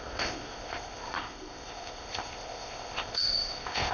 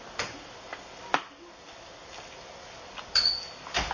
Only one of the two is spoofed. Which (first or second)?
first